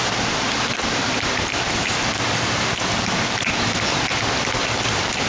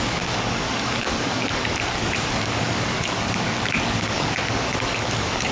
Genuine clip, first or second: first